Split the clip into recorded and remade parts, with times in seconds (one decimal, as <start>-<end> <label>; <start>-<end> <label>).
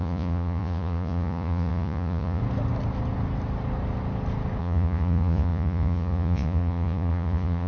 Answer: 0.0-2.4 remade; 2.4-4.6 recorded; 4.6-7.7 remade